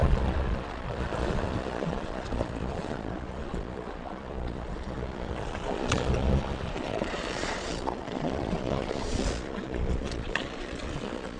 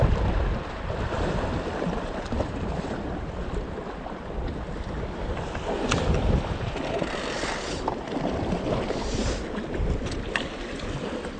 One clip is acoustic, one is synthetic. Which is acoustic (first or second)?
second